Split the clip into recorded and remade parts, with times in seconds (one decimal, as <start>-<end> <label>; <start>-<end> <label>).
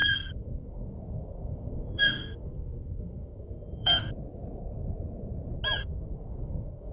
0.0-4.1 remade; 4.1-5.8 recorded; 5.8-6.9 remade